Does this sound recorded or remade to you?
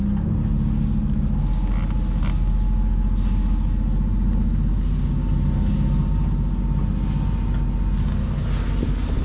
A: recorded